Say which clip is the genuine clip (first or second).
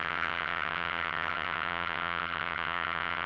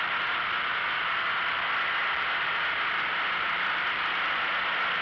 second